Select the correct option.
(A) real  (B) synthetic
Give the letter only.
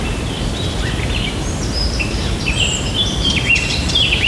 B